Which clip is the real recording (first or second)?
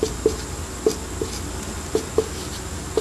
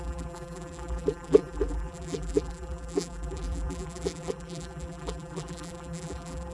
first